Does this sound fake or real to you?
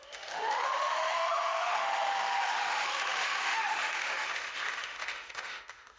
fake